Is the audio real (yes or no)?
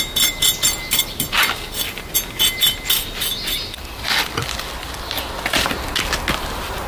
yes